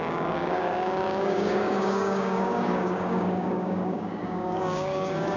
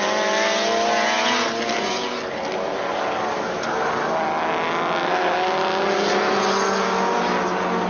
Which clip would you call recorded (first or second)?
second